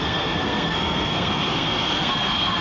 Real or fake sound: fake